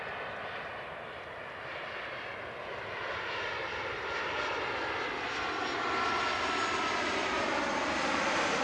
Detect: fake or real fake